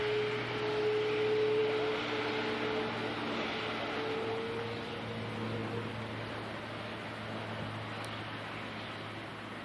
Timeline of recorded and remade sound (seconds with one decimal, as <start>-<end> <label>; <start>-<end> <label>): 0.0-9.6 recorded